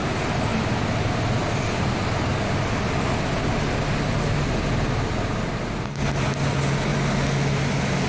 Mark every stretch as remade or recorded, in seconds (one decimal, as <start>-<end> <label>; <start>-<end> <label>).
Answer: 0.0-8.1 recorded